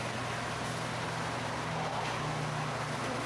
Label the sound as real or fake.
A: real